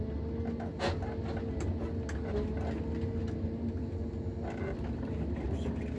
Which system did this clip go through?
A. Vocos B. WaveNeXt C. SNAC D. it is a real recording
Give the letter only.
D